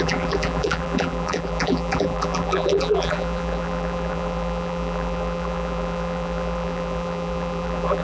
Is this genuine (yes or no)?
no